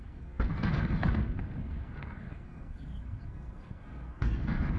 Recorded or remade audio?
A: remade